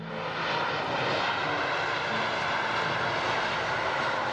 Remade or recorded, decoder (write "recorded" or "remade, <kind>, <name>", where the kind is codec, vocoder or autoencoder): recorded